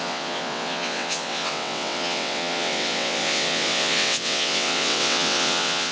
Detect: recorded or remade remade